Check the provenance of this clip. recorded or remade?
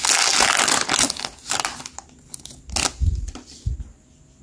recorded